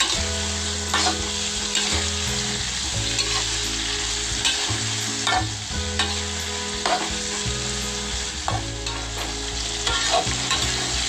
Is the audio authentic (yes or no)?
yes